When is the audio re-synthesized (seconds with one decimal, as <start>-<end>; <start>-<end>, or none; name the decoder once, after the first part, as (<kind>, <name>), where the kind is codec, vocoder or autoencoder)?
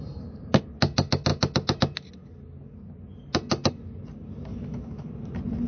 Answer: 4.5-5.1 (autoencoder, DAC-VAE)